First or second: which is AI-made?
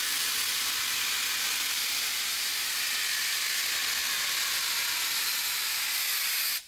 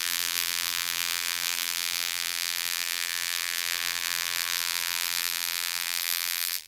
second